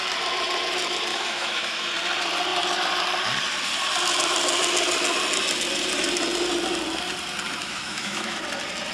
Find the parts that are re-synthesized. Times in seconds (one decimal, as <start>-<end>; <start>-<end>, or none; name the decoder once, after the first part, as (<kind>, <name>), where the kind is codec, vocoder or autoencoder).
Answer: 1.1-1.9 (autoencoder, DAC-VAE); 7.6-8.4